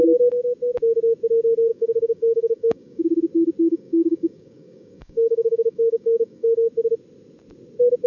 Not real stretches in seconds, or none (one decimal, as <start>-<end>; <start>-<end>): 1.7-3.0; 3.7-6.7